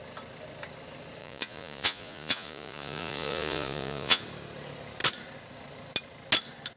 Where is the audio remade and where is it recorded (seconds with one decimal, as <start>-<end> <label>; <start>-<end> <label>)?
0.0-1.2 recorded; 1.2-4.2 remade; 4.2-6.8 recorded